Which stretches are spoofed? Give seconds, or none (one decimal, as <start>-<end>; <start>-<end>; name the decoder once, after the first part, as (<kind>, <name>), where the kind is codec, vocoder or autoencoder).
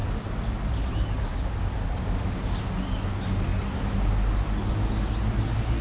none